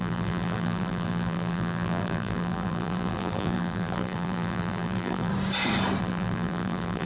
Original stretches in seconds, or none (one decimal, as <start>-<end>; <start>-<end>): 5.3-6.0